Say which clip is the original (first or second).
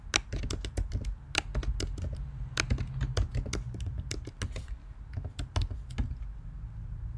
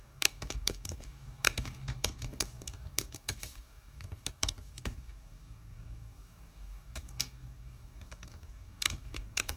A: first